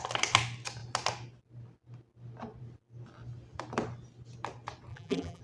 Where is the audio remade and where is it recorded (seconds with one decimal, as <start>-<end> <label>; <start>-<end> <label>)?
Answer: 0.0-4.9 recorded; 4.9-5.4 remade